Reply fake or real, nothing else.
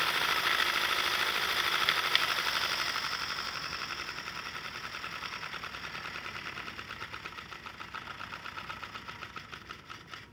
real